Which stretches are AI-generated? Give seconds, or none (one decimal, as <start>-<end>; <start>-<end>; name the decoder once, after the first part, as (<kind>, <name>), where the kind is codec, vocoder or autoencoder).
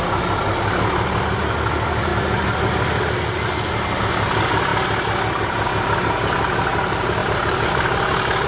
7.2-7.7 (vocoder, BigVGAN v2)